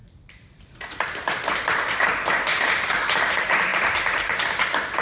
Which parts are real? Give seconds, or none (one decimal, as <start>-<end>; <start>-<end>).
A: 2.0-3.7; 4.4-5.0